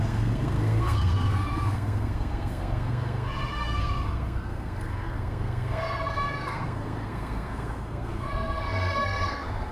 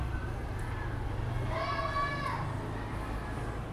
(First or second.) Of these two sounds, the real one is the second